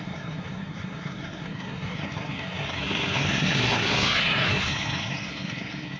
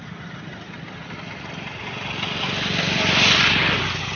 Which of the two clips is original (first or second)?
second